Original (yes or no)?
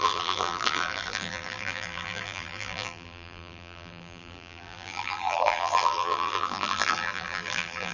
no